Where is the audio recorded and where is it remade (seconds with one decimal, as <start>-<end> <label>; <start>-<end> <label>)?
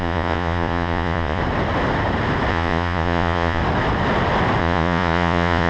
0.0-1.4 remade; 1.4-2.5 recorded; 2.5-3.6 remade; 3.6-4.6 recorded; 4.6-5.7 remade